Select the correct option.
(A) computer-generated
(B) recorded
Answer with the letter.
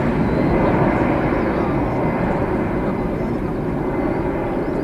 B